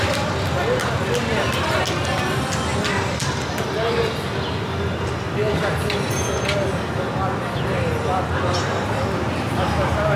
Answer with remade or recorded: recorded